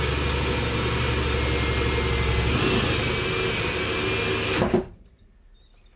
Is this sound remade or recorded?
recorded